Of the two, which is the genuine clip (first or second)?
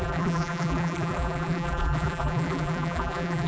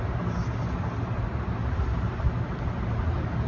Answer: second